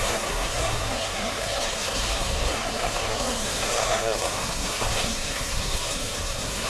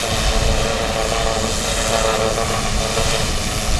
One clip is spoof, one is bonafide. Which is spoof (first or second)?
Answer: first